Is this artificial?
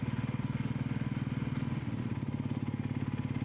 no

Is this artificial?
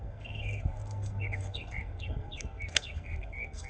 yes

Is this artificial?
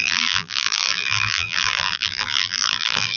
yes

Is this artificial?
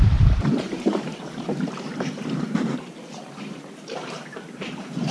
yes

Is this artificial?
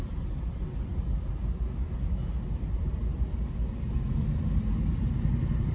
no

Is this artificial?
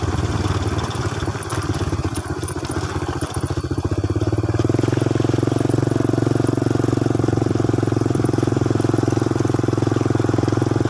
no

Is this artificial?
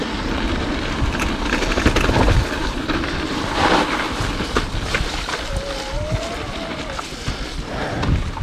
no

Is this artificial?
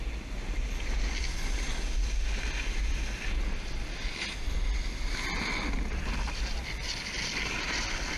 no